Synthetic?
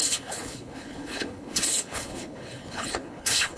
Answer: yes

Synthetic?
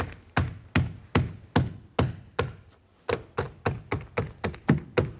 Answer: no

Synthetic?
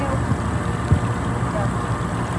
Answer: no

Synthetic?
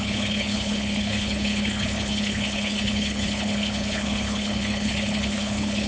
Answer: yes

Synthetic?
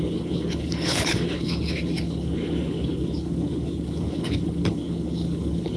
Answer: yes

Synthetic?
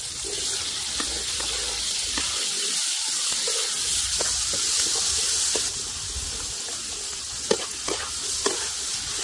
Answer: no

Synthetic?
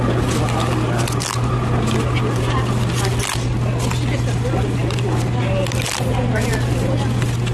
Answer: no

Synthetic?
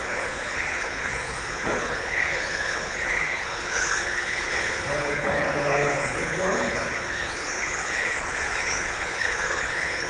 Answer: yes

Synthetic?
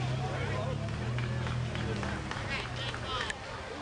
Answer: no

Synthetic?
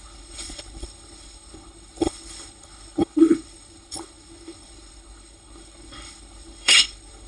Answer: yes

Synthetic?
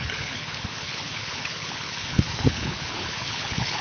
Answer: yes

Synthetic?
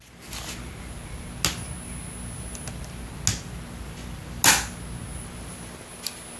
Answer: no